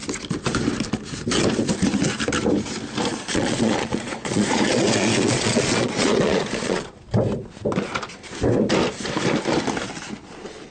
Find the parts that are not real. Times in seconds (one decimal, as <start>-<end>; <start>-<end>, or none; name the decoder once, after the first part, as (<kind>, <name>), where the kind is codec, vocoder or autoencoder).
3.1-7.0 (vocoder, Vocos)